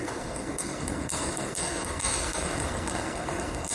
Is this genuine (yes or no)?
no